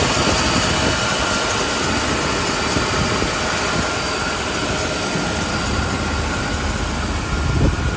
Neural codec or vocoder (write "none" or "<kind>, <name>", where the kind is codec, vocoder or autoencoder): none